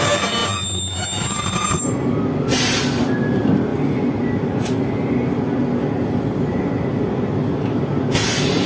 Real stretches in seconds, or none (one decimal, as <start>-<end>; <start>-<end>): 0.0-8.7